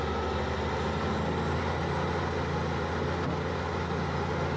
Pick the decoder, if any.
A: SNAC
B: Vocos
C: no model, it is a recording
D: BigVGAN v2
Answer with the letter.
C